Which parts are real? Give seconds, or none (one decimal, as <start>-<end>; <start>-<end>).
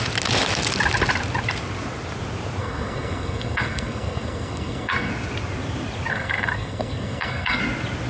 0.0-2.6; 5.1-6.1; 7.6-8.1